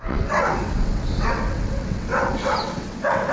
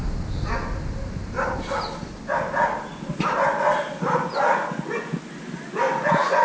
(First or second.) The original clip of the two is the second